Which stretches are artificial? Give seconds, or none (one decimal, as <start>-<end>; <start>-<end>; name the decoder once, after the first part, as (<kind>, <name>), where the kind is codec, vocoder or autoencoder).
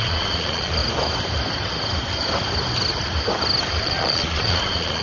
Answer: 0.0-0.8 (vocoder, Vocos); 3.8-5.0